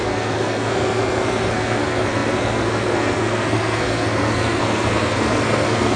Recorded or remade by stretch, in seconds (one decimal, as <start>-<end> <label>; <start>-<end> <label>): 0.0-6.0 remade